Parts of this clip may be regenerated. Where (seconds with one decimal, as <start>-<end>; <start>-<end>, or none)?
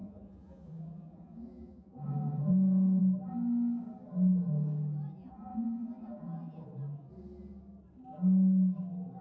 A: 0.0-3.0; 4.4-7.1